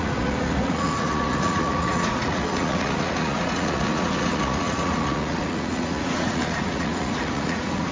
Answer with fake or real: fake